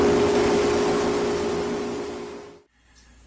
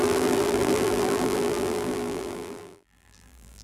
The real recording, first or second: first